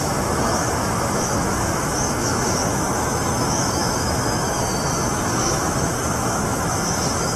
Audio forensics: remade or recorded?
remade